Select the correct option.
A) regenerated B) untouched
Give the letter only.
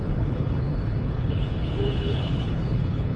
A